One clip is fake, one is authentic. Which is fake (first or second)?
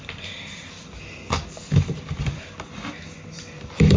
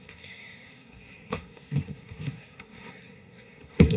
second